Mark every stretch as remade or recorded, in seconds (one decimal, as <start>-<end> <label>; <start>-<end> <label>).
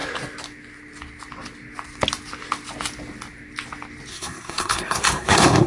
0.0-4.1 recorded; 4.1-5.7 remade